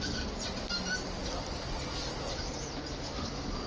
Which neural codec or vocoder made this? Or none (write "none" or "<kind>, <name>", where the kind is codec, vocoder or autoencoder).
none